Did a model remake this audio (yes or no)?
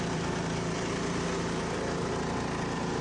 yes